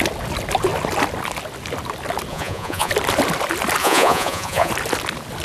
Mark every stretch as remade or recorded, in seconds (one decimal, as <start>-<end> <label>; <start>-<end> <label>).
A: 0.0-2.3 recorded; 2.3-2.9 remade; 2.9-3.8 recorded; 3.8-4.7 remade; 4.7-5.4 recorded